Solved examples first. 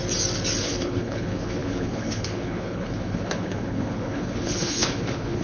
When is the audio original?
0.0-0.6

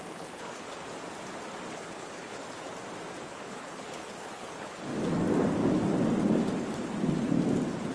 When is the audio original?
0.8-1.7; 2.4-3.2; 4.9-7.9

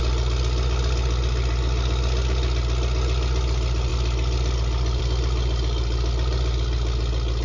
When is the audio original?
0.0-7.4

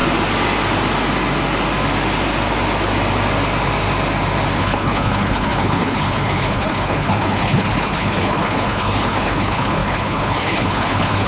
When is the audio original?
0.0-4.6

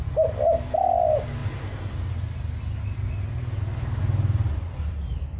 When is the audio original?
0.0-5.4